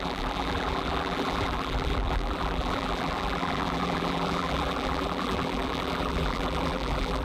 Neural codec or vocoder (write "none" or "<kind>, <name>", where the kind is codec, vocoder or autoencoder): vocoder, BigVGAN v2